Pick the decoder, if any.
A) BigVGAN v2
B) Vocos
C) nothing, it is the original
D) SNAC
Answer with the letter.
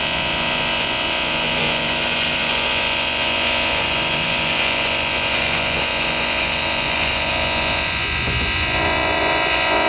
B